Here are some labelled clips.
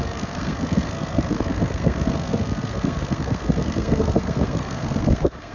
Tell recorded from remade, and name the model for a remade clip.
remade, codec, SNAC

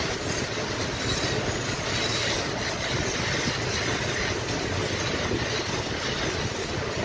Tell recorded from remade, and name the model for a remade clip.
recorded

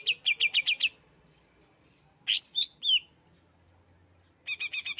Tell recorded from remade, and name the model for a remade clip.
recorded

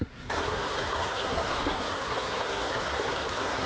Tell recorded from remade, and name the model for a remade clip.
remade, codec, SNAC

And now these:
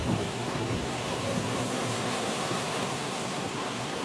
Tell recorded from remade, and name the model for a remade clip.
remade, codec, SNAC